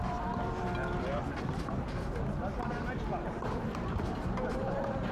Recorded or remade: recorded